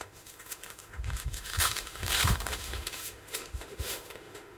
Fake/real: fake